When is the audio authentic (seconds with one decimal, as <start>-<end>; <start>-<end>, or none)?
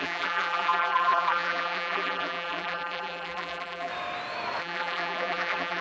3.9-4.6